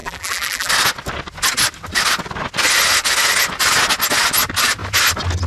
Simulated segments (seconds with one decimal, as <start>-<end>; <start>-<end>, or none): 0.0-0.7

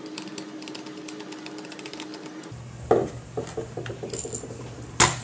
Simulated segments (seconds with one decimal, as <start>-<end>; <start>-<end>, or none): none

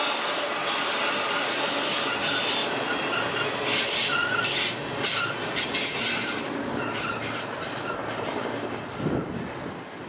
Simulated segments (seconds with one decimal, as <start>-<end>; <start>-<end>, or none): none

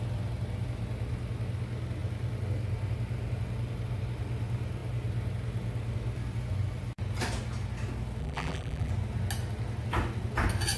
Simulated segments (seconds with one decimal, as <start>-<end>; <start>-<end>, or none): 8.2-8.9

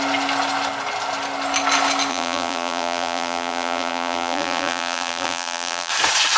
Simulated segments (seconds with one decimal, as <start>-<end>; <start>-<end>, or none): 2.1-5.9

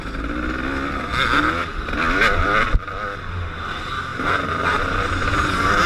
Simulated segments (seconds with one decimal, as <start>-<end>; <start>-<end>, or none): 4.1-5.5

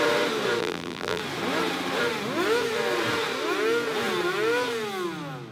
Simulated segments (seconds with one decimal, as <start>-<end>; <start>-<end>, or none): 0.6-1.2

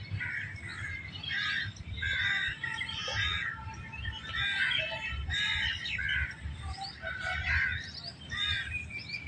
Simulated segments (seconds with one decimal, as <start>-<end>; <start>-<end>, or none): 0.0-3.0; 4.8-9.3